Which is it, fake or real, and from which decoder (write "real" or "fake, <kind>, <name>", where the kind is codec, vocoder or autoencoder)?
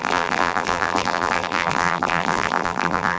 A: fake, vocoder, BigVGAN v2